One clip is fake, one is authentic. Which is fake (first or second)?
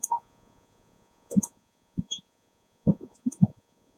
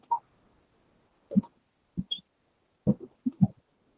first